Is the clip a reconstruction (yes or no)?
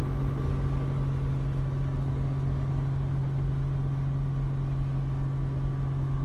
no